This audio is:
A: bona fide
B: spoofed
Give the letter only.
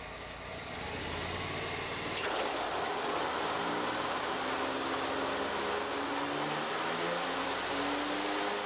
A